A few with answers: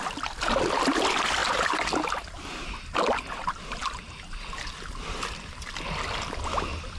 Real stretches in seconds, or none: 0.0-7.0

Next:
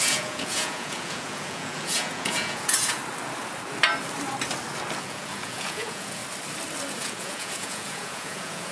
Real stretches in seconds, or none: 3.0-5.0; 6.2-6.9

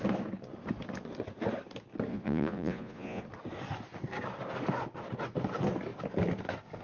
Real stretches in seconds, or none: 0.0-2.1; 3.2-6.8

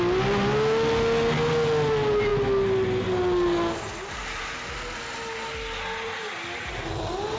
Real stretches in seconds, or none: 0.0-7.4

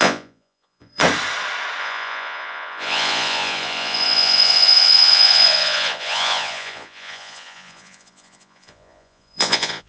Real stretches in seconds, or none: 1.0-1.8

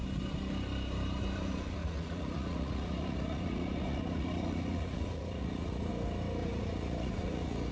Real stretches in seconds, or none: 0.0-1.8; 5.9-6.4